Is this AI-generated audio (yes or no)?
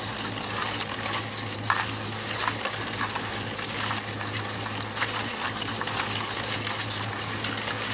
no